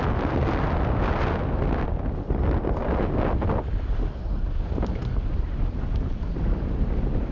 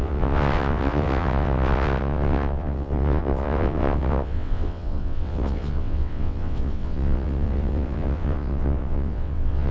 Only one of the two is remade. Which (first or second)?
second